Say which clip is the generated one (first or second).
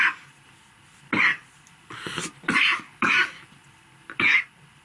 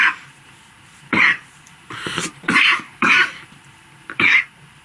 second